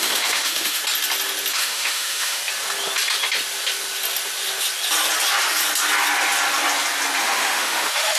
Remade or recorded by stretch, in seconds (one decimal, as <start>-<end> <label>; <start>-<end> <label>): 0.0-0.8 remade; 0.8-1.5 recorded; 1.5-2.4 remade; 2.4-7.2 recorded; 7.2-8.2 remade